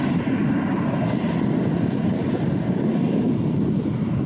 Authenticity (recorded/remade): recorded